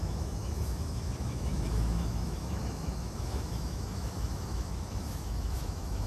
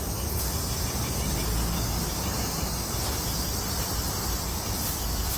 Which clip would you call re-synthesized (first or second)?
first